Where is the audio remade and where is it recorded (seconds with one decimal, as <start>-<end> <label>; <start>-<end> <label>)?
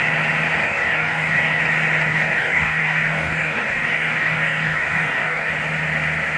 0.0-0.6 recorded; 0.6-1.6 remade; 1.6-2.1 recorded; 2.1-5.5 remade; 5.5-6.4 recorded